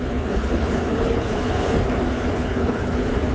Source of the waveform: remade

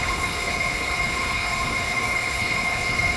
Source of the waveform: remade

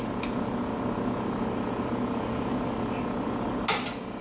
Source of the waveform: recorded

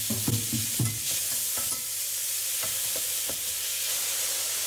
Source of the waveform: recorded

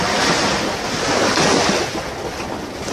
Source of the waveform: recorded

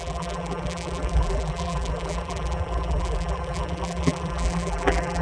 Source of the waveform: remade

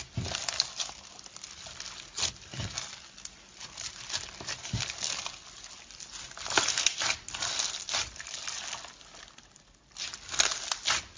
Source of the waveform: recorded